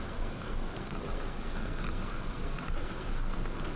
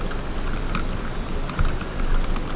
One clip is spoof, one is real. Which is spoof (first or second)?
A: first